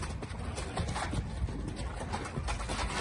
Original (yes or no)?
yes